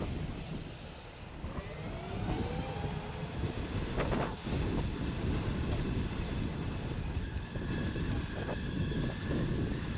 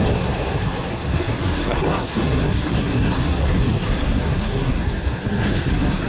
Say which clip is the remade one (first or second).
second